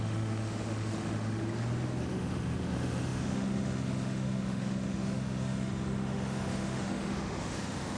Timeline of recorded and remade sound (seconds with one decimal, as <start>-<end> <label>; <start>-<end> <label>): 0.0-1.4 remade; 1.4-2.0 recorded; 2.0-8.0 remade